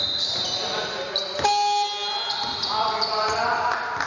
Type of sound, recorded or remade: recorded